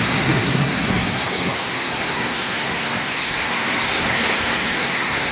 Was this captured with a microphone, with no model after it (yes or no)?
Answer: no